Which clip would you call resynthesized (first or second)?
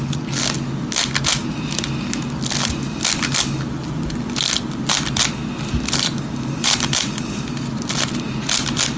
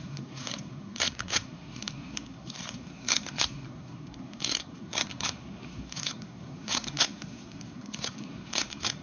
second